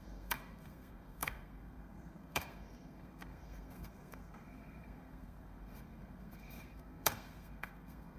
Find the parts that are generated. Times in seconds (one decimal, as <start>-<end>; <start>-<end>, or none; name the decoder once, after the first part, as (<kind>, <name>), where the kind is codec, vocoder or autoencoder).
0.0-8.2 (codec, SNAC)